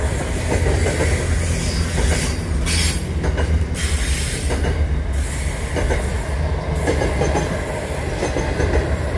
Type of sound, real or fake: real